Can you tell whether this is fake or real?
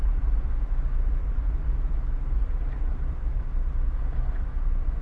fake